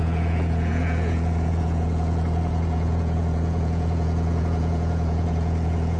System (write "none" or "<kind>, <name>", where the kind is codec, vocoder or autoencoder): vocoder, Vocos